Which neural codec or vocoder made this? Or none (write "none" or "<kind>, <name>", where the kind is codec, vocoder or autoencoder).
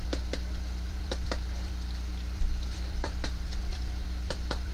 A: vocoder, BigVGAN v2